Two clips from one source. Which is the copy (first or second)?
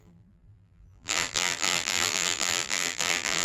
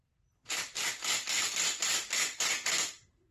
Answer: first